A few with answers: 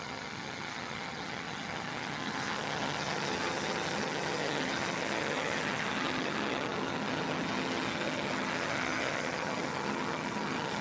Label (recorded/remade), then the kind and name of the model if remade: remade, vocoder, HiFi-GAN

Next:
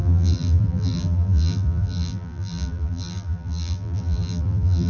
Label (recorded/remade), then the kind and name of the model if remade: remade, vocoder, BigVGAN v2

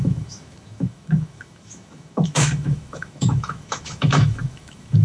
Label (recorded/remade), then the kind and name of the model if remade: remade, autoencoder, DAC-VAE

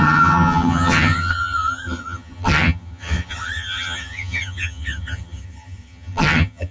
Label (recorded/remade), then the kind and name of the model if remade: remade, vocoder, HiFi-GAN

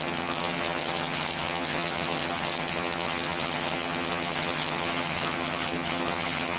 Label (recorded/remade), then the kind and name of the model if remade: remade, vocoder, HiFi-GAN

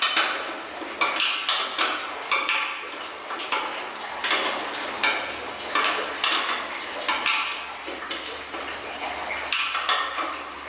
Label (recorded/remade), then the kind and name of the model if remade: recorded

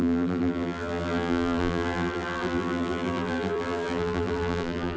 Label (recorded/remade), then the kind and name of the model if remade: remade, vocoder, BigVGAN v2